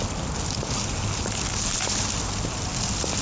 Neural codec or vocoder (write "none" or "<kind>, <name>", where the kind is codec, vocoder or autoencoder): none